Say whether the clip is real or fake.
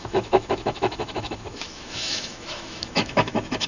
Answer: fake